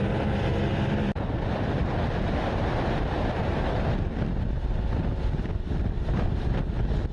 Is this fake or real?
fake